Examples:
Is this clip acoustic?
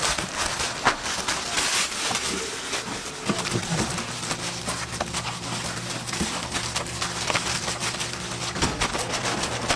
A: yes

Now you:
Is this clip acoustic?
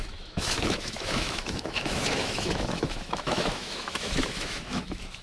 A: no